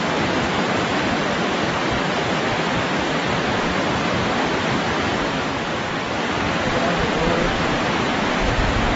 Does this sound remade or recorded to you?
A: recorded